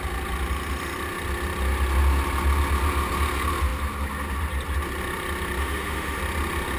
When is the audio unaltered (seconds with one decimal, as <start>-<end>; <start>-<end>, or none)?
0.0-5.6; 6.2-6.8